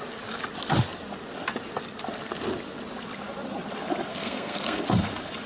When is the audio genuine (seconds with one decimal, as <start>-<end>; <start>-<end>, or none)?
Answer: 0.0-4.1; 4.8-5.5